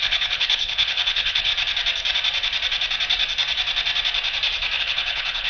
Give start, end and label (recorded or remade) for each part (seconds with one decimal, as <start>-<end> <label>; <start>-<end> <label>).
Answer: 0.0-1.5 remade; 1.5-4.8 recorded; 4.8-5.5 remade